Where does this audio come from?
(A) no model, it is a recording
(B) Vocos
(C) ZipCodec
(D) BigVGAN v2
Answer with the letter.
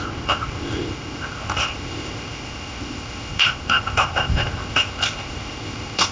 C